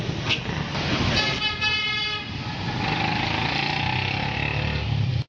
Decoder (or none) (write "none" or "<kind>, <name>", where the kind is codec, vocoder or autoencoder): none